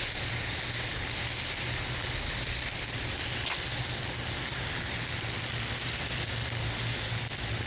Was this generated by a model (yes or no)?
no